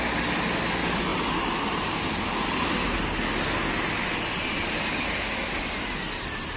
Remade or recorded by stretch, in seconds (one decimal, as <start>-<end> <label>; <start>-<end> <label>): 0.0-6.6 recorded